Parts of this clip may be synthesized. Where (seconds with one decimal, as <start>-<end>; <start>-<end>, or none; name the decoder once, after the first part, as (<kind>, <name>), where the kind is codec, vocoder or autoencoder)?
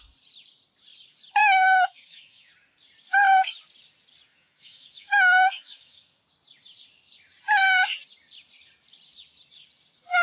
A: 1.4-2.5 (autoencoder, DAC-VAE); 4.3-6.2